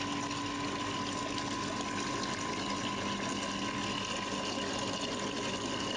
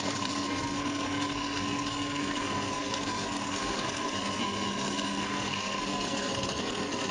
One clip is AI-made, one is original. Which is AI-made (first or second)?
second